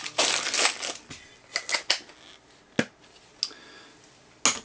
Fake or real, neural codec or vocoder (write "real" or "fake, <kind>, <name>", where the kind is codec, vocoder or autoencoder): real